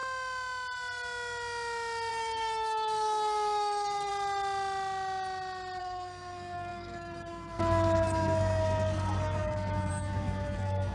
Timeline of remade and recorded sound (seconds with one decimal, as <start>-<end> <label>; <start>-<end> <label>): 0.0-2.1 recorded; 2.1-4.1 remade; 4.1-5.8 recorded; 5.8-10.9 remade